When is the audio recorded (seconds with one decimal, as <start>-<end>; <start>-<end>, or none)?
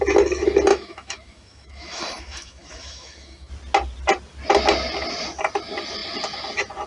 0.0-0.7; 3.5-6.9